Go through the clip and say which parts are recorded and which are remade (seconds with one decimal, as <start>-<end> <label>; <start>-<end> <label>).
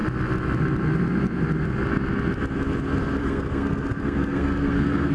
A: 0.0-3.2 recorded; 3.2-5.1 remade